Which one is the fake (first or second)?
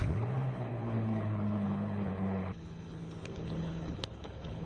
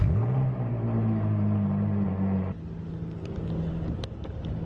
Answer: first